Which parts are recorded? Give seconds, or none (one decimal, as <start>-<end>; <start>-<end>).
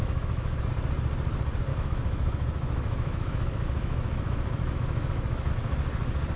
0.6-1.7; 5.5-6.4